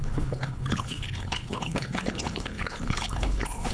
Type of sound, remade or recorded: remade